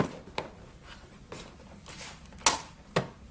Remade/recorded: recorded